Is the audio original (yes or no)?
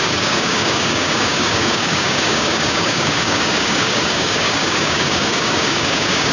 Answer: no